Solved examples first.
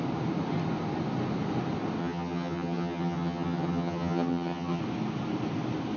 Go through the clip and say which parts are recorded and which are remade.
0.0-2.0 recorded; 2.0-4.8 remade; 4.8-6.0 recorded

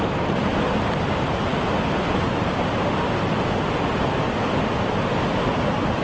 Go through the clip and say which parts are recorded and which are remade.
0.0-6.0 recorded

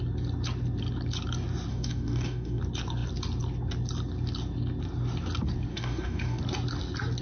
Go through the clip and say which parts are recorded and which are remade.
0.0-1.7 recorded; 1.7-2.6 remade; 2.6-5.7 recorded; 5.7-6.4 remade; 6.4-7.2 recorded

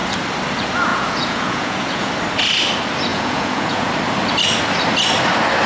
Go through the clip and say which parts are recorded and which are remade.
0.0-0.9 recorded; 0.9-2.1 remade; 2.1-3.1 recorded; 3.1-3.9 remade; 3.9-5.7 recorded

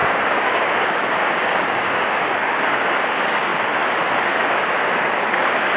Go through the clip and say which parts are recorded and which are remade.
0.0-3.5 remade; 3.5-4.4 recorded; 4.4-5.8 remade

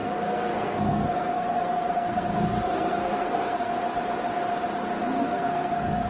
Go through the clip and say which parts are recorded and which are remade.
0.0-3.7 remade; 3.7-5.2 recorded; 5.2-6.1 remade

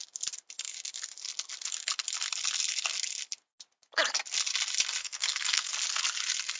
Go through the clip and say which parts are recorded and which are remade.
0.0-5.0 recorded; 5.0-5.7 remade; 5.7-6.6 recorded

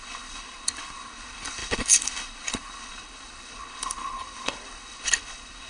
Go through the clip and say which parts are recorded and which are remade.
0.0-5.7 remade